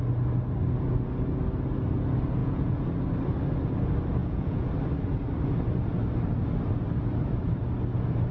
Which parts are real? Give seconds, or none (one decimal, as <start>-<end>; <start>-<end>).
0.0-2.4; 2.9-4.2; 4.7-8.3